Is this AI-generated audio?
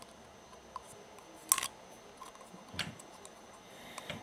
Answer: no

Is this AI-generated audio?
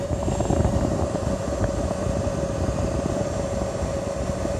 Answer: no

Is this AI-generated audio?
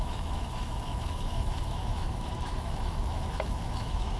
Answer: yes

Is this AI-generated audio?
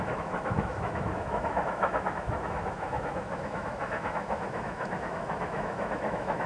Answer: yes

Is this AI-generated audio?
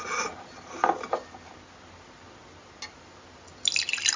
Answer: no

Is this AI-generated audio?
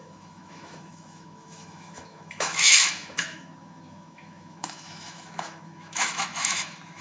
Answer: yes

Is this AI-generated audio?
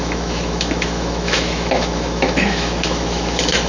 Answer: yes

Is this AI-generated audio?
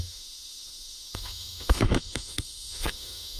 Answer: yes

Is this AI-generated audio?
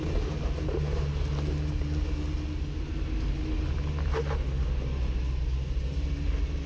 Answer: no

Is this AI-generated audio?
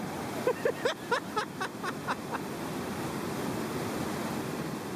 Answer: no